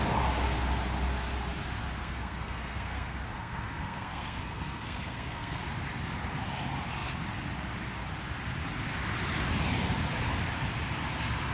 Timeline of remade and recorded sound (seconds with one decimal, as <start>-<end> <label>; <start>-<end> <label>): 0.0-2.0 recorded; 2.0-5.6 remade; 5.6-11.5 recorded